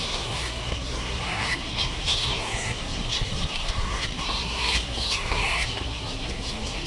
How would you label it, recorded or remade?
remade